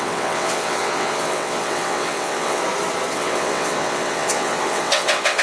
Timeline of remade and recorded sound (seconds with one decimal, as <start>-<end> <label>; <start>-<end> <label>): 0.0-2.6 remade; 2.6-3.1 recorded; 3.1-5.4 remade